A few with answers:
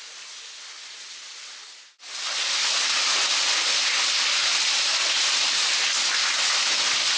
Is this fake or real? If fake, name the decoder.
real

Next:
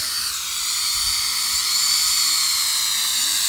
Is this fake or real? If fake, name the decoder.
real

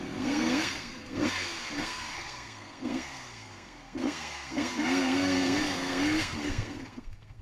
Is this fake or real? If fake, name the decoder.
fake, codec, SNAC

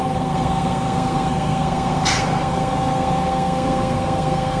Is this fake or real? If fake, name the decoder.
fake, codec, SNAC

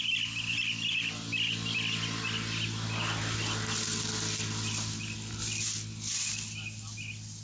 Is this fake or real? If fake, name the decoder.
real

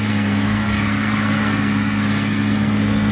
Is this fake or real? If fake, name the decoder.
fake, codec, SNAC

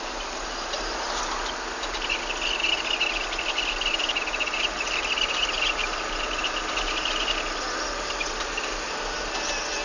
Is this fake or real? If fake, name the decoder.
real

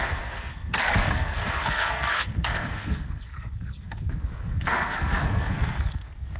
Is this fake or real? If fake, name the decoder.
fake, codec, SNAC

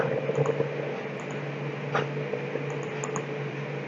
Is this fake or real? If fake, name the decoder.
real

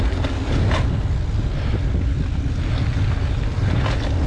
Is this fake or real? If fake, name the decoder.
real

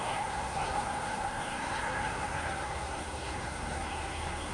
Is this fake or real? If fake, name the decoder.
fake, codec, SNAC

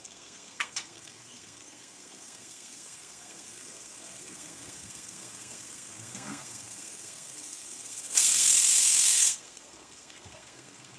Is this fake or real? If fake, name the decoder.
fake, codec, SNAC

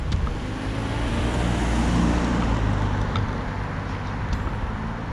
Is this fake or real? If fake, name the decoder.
real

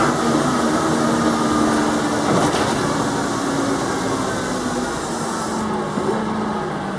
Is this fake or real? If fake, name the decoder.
real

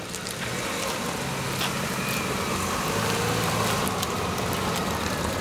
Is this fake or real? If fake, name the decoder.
real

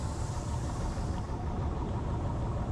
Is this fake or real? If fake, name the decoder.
real